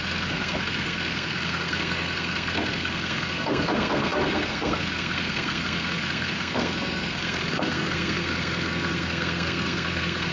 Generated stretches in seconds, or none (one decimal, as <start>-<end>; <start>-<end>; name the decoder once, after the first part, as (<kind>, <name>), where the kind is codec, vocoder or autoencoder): 0.0-10.3 (codec, SNAC)

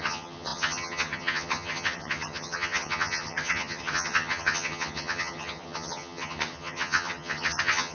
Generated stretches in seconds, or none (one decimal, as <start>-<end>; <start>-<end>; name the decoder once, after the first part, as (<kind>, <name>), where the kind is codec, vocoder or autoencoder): 0.0-7.9 (vocoder, HiFi-GAN)

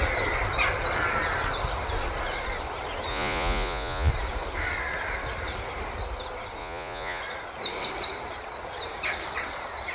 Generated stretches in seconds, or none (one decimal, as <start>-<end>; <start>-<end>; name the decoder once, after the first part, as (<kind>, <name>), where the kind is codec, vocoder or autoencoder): 3.1-4.1 (vocoder, Vocos); 6.6-7.2

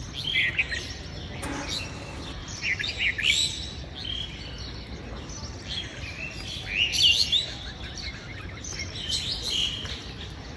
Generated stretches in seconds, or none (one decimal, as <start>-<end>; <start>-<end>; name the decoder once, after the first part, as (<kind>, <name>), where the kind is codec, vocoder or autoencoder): 2.4-2.9 (vocoder, BigVGAN v2); 8.3-9.3

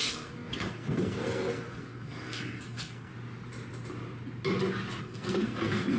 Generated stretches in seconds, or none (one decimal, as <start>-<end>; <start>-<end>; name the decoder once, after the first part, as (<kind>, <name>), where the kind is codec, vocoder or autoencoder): 0.0-3.1 (codec, SNAC); 5.0-6.0

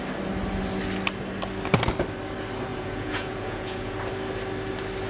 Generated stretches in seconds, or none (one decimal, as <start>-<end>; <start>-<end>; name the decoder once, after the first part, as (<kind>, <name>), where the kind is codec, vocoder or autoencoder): 2.7-4.0 (vocoder, Vocos)

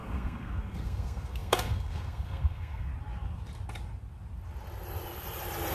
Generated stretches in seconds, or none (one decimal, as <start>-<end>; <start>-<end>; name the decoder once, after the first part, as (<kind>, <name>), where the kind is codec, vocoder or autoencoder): 0.0-2.9 (codec, SNAC)